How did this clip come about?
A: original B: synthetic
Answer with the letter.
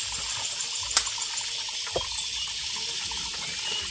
A